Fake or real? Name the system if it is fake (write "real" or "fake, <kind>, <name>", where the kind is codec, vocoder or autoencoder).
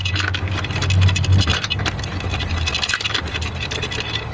real